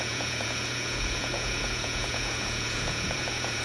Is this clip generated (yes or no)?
yes